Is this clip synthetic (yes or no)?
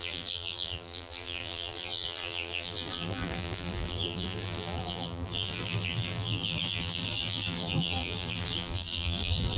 yes